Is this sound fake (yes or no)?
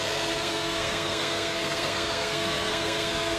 yes